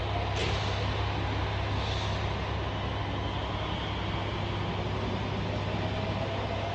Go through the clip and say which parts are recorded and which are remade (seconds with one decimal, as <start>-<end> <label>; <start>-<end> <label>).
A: 0.0-6.7 recorded